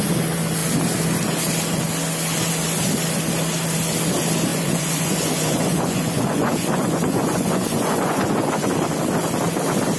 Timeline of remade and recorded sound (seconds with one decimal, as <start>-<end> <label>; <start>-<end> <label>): 0.0-4.5 recorded; 4.5-8.7 remade; 8.7-10.0 recorded